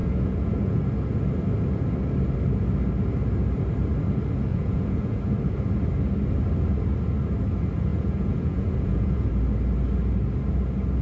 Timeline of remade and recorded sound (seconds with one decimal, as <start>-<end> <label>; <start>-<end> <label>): 0.0-0.8 remade; 0.8-4.5 recorded; 4.5-5.2 remade; 5.2-7.9 recorded; 7.9-9.3 remade; 9.3-11.0 recorded